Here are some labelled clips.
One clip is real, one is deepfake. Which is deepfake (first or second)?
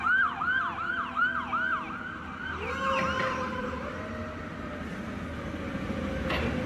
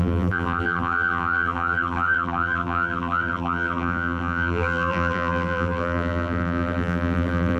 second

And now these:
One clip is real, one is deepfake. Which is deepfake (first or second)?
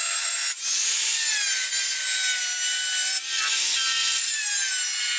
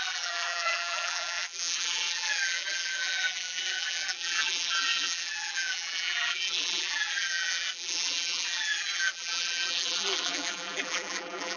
second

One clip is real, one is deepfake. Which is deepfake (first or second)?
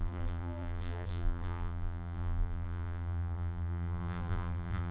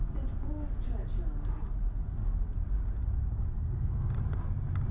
first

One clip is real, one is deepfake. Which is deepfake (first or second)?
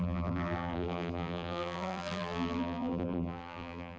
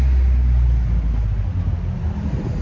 first